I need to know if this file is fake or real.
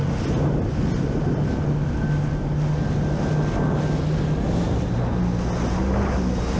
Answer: real